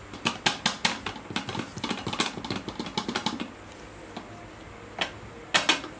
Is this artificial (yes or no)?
no